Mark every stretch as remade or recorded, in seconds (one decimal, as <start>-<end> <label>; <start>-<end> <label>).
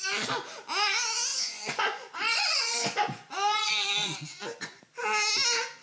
0.0-1.3 recorded; 1.3-4.8 remade; 4.8-5.8 recorded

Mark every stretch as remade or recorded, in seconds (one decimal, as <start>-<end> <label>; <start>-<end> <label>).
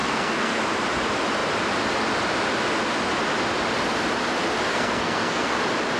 0.0-0.6 remade; 0.6-4.7 recorded; 4.7-5.6 remade; 5.6-6.0 recorded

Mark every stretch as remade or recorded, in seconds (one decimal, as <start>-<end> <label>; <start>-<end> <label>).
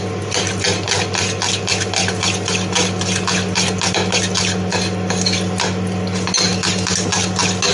0.0-7.7 recorded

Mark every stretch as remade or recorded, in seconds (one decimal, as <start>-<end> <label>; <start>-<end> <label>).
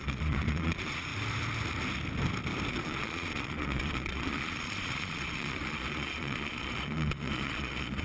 0.0-1.1 remade; 1.1-2.7 recorded; 2.7-8.0 remade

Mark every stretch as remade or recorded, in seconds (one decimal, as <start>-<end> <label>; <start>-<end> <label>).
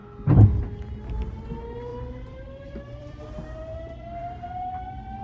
0.0-1.9 recorded; 1.9-3.2 remade; 3.2-4.2 recorded; 4.2-4.7 remade; 4.7-5.2 recorded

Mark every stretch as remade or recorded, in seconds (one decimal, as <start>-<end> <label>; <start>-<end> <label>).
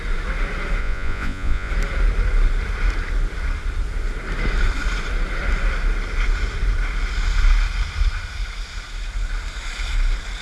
0.0-0.8 recorded; 0.8-1.7 remade; 1.7-10.4 recorded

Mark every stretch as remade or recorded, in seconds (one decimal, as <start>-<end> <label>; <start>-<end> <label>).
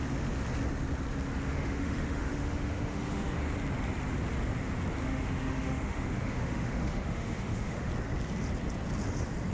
0.0-1.5 recorded; 1.5-3.4 remade; 3.4-5.0 recorded; 5.0-7.9 remade; 7.9-9.5 recorded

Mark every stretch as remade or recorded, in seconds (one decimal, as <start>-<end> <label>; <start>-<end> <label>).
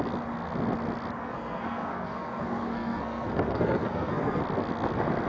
0.0-1.2 recorded; 1.2-4.4 remade; 4.4-5.3 recorded